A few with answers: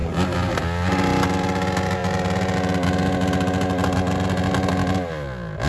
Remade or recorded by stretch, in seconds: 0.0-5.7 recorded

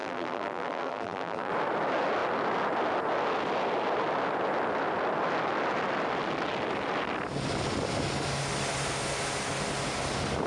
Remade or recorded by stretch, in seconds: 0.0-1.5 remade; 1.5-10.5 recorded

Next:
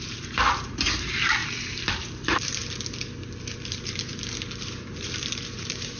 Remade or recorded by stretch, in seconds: 0.0-1.4 remade; 1.4-1.9 recorded; 1.9-2.6 remade; 2.6-3.5 recorded; 3.5-6.0 remade